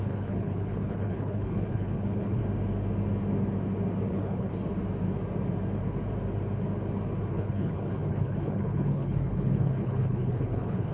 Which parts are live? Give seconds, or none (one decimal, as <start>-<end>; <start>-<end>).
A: 2.4-4.1; 4.5-7.3